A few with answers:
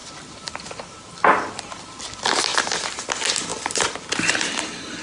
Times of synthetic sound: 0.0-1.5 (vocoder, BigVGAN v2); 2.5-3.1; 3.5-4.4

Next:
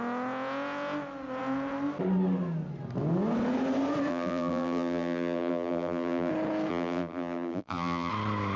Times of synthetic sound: 4.1-6.3 (vocoder, BigVGAN v2); 6.7-8.1